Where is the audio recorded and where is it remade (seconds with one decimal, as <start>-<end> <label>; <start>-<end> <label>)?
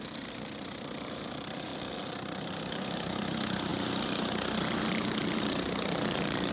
0.0-1.7 remade; 1.7-2.2 recorded; 2.2-6.5 remade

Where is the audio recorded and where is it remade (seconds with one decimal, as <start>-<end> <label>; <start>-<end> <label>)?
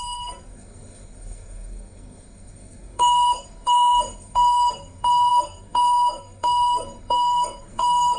0.0-8.2 remade